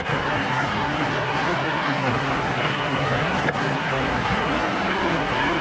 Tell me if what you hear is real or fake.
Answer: fake